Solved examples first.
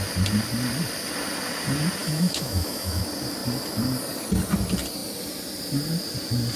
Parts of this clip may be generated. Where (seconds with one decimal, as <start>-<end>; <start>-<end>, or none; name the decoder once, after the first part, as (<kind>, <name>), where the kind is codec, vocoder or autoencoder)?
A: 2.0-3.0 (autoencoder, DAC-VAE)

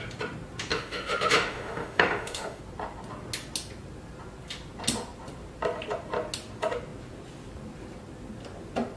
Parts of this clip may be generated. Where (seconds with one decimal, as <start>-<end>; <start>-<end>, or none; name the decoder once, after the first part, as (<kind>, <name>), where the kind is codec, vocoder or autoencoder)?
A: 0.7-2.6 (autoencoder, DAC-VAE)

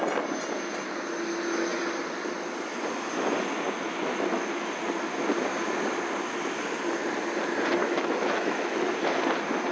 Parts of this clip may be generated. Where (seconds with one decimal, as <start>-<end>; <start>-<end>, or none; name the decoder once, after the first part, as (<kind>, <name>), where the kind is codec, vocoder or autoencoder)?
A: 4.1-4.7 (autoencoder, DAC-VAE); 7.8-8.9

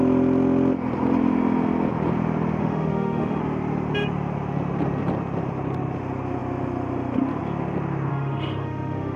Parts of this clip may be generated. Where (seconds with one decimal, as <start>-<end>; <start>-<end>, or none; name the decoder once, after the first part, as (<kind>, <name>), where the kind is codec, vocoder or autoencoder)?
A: 2.6-3.4 (autoencoder, DAC-VAE); 8.1-9.2